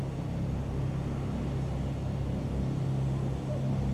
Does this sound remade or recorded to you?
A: recorded